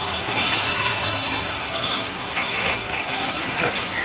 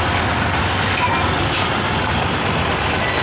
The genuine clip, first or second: second